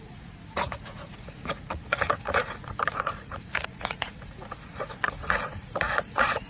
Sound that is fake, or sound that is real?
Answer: fake